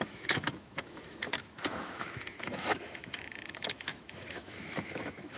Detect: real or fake fake